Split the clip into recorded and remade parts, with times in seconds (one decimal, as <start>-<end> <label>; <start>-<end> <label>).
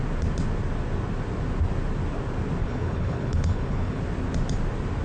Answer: 0.0-2.6 recorded; 2.6-4.0 remade; 4.0-5.0 recorded